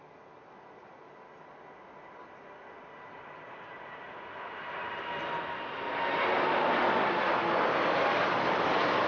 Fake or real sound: real